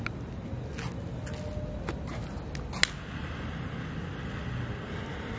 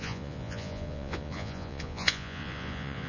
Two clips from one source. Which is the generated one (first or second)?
second